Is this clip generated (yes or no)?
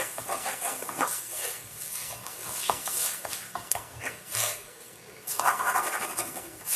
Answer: yes